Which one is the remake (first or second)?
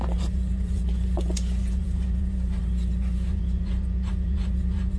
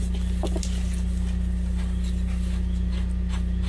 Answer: first